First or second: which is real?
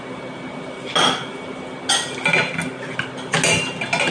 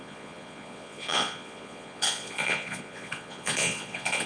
first